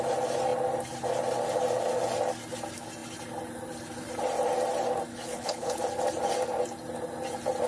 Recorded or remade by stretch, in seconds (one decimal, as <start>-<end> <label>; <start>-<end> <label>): 0.0-5.1 recorded; 5.1-5.8 remade; 5.8-7.7 recorded